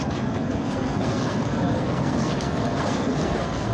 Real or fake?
fake